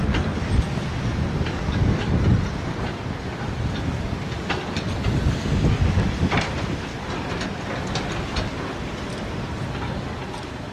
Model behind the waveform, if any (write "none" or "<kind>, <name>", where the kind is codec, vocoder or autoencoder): none